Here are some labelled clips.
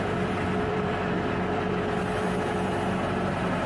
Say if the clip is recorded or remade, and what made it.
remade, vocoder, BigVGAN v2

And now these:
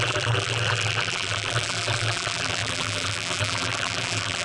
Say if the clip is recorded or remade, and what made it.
remade, vocoder, BigVGAN v2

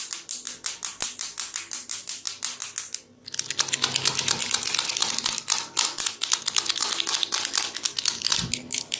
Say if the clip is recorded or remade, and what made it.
recorded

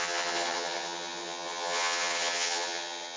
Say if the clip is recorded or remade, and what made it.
remade, vocoder, HiFi-GAN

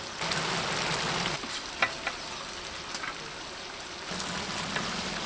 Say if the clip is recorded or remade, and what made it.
recorded